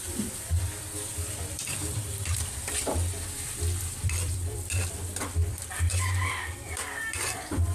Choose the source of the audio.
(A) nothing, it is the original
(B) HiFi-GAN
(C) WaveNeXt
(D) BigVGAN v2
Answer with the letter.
D